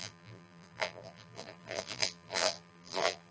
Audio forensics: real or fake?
fake